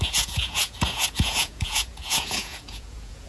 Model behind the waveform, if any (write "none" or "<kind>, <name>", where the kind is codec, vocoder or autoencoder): vocoder, Vocos